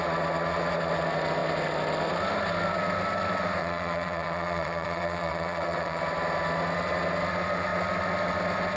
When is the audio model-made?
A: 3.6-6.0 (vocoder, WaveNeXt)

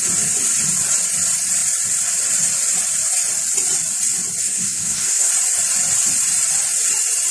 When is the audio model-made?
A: 4.4-5.3 (codec, SNAC)

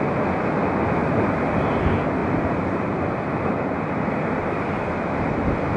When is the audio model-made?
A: none

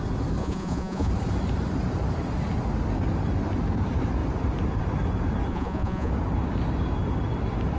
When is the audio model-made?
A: 0.4-1.1 (vocoder, Vocos); 5.5-6.1

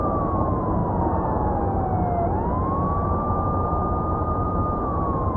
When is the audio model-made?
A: 0.0-0.8 (vocoder, BigVGAN v2); 4.0-5.4

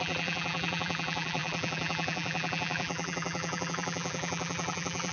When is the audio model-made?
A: 0.0-5.1 (vocoder, BigVGAN v2)